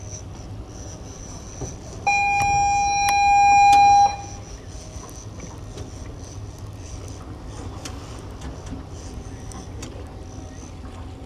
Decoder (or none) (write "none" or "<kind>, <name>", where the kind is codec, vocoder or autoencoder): none